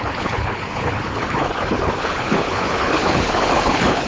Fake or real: fake